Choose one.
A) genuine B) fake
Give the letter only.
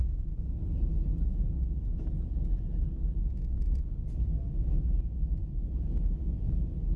A